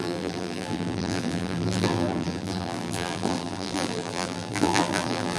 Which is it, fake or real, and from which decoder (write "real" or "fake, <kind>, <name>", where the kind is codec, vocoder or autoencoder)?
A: fake, vocoder, BigVGAN v2